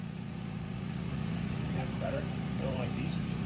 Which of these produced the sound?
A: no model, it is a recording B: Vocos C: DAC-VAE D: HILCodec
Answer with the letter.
B